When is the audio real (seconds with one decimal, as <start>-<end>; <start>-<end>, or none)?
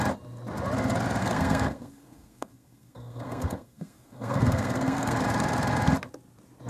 0.0-1.2; 5.2-6.7